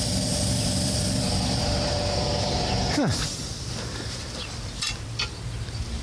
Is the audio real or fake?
fake